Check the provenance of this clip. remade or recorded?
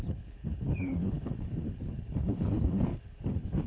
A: remade